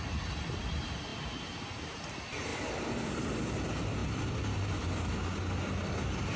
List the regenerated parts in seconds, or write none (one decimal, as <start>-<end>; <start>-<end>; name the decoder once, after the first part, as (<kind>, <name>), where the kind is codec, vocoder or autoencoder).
none